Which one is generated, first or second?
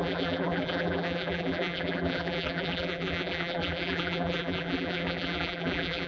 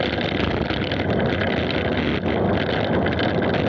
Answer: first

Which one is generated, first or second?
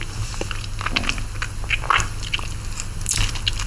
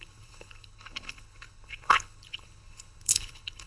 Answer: second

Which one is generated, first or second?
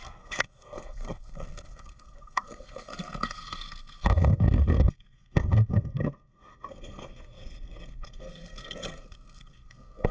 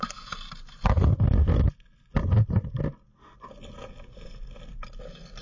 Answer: first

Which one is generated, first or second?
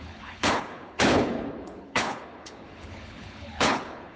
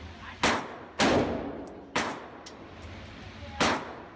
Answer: first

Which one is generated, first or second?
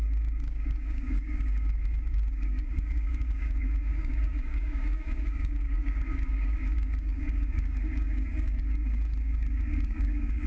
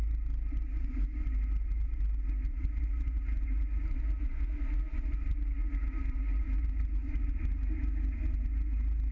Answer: first